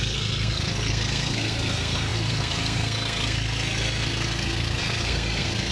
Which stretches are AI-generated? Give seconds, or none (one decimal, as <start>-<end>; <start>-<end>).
0.0-5.7